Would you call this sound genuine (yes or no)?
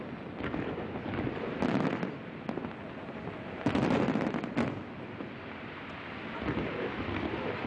yes